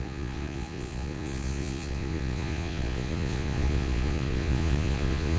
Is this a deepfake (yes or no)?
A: yes